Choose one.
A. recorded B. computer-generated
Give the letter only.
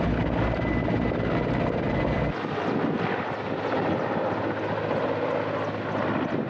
A